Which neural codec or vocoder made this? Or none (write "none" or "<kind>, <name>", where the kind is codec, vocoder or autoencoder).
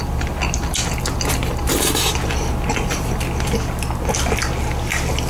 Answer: none